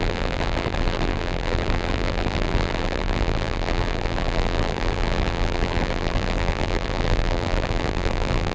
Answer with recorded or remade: remade